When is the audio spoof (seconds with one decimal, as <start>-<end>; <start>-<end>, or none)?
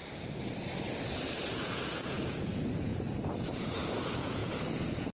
1.5-2.9; 3.5-5.1